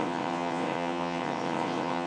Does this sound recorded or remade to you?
remade